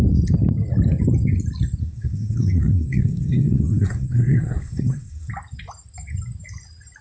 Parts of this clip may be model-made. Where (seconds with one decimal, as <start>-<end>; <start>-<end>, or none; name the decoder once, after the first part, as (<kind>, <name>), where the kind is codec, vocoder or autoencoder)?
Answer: 1.8-5.3 (codec, SNAC)